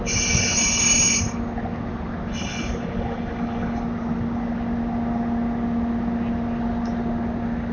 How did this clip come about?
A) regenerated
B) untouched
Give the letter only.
B